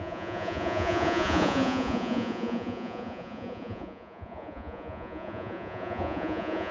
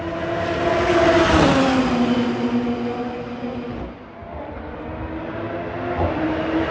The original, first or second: second